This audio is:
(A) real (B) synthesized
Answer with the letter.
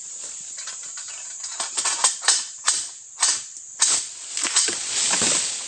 A